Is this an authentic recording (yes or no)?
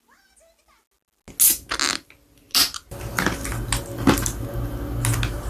yes